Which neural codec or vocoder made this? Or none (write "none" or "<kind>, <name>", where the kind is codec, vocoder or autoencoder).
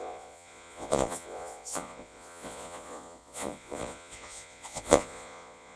vocoder, Vocos